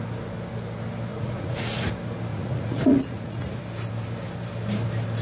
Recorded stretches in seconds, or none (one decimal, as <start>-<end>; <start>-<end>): 0.0-1.1; 1.9-2.3; 3.6-5.2